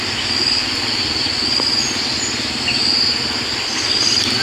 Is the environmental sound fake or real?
fake